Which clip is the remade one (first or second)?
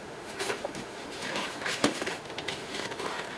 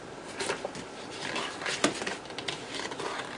first